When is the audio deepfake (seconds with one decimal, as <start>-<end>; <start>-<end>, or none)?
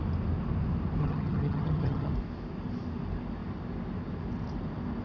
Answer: 1.0-2.1